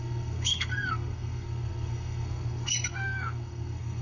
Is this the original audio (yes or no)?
no